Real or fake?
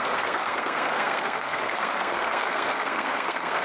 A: fake